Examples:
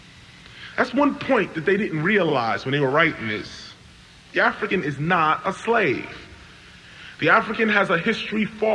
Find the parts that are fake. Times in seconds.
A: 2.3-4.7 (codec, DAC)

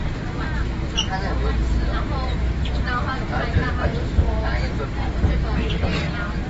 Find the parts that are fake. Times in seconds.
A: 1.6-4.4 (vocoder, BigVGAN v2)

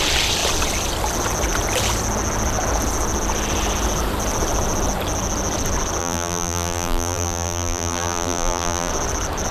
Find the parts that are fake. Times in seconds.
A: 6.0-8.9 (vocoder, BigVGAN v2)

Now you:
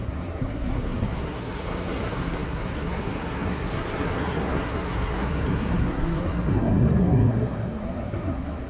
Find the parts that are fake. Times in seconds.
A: 0.0-8.7 (codec, SNAC)

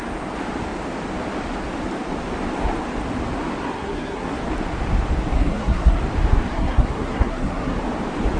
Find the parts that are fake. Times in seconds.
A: 3.6-4.4 (codec, SNAC); 5.3-6.0; 6.5-7.8